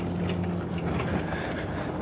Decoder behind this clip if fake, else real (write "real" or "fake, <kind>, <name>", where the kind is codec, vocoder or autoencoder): real